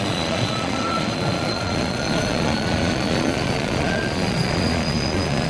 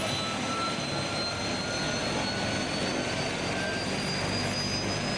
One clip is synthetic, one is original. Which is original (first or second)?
second